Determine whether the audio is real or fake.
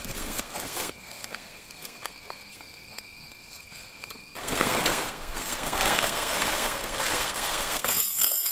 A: fake